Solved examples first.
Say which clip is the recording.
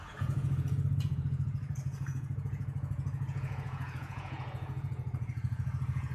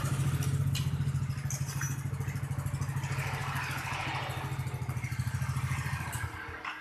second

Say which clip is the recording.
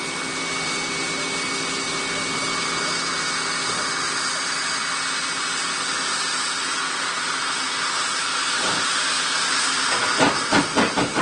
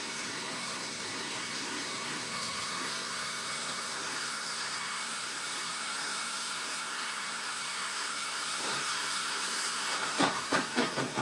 first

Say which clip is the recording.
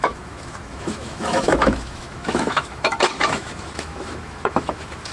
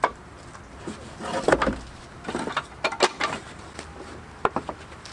second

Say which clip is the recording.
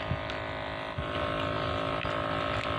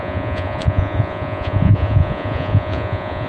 first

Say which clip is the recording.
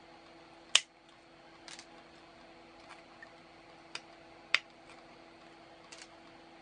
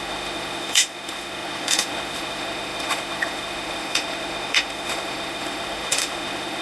first